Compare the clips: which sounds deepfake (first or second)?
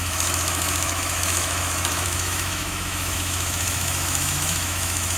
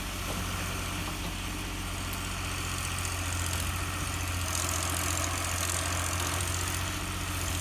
first